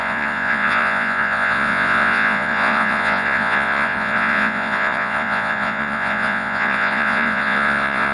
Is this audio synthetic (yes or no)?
yes